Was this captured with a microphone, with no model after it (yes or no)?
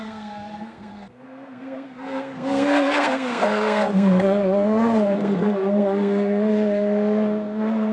no